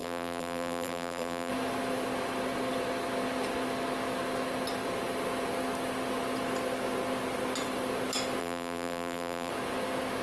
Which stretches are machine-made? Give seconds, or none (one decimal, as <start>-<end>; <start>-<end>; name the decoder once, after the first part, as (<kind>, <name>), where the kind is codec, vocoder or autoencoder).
0.0-1.5 (vocoder, BigVGAN v2); 8.4-9.5